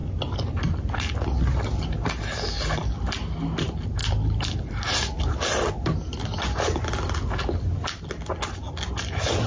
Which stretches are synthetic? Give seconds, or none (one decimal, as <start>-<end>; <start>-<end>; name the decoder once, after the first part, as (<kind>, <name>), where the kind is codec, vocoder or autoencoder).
none

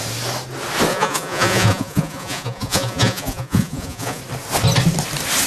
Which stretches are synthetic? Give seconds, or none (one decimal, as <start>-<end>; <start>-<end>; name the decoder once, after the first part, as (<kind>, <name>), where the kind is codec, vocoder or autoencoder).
0.9-4.2 (vocoder, Vocos)

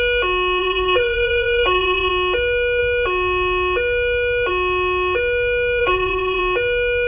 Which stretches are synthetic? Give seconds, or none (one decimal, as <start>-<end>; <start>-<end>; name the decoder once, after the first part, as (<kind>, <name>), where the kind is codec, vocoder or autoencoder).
0.6-2.1 (vocoder, Vocos); 5.8-6.4

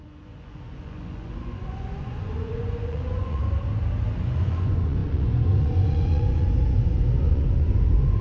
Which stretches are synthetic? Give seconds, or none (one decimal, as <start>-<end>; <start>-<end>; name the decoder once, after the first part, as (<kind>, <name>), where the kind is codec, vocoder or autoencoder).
0.0-3.4 (vocoder, Vocos); 4.2-8.2

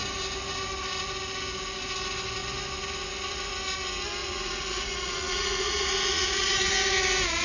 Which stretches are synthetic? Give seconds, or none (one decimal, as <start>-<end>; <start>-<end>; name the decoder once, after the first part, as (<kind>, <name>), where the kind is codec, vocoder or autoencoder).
4.2-6.7 (vocoder, Vocos)